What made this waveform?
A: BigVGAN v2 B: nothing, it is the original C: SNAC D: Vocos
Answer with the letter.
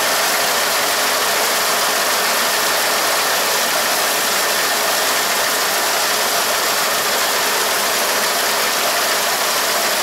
B